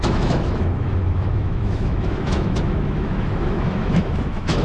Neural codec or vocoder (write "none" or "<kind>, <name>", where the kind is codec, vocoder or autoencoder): autoencoder, DAC-VAE